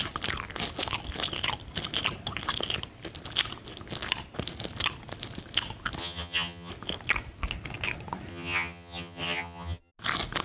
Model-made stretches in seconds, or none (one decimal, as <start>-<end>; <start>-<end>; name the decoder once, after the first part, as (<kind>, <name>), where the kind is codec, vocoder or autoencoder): 6.0-6.7 (vocoder, HiFi-GAN); 8.3-9.9